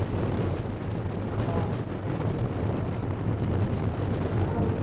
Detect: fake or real real